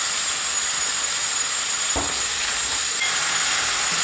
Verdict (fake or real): real